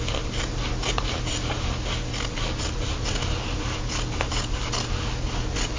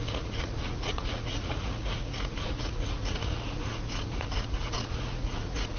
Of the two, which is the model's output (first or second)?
second